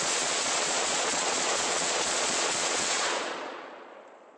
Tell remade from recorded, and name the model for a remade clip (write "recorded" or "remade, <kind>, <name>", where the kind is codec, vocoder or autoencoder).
remade, vocoder, Vocos